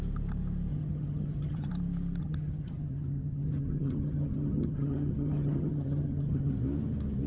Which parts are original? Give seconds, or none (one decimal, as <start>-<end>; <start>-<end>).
0.0-0.7; 1.7-2.2; 6.5-7.3